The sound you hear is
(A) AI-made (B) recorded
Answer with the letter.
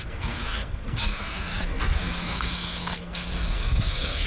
A